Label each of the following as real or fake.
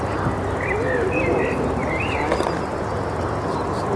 real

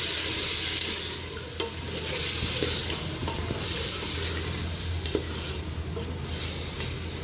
real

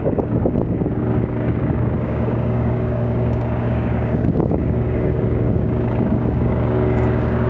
fake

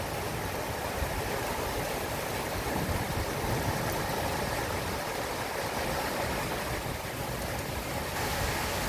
real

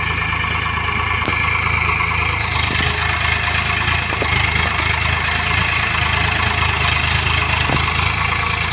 real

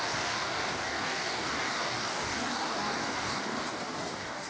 fake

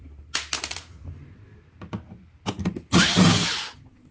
real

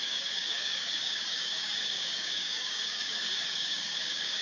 fake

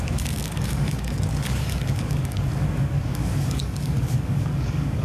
fake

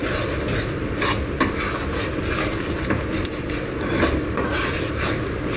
real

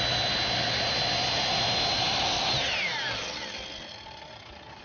real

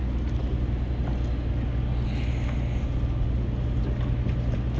real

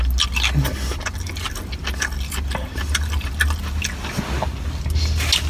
real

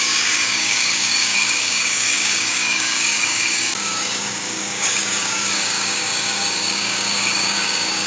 fake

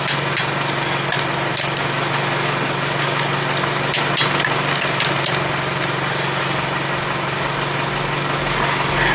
real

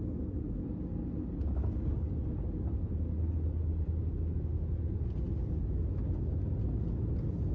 real